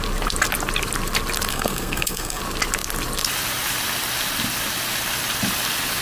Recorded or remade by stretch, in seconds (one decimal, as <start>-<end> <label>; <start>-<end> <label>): 0.0-1.5 recorded; 1.5-2.4 remade; 2.4-6.0 recorded